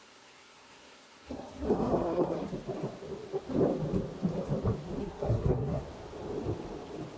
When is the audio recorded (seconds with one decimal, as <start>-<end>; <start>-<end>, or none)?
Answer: 2.5-5.0; 5.8-7.2